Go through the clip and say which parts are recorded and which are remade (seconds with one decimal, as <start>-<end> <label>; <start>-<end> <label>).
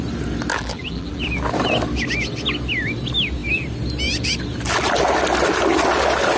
0.0-0.5 recorded; 0.5-1.5 remade; 1.5-6.4 recorded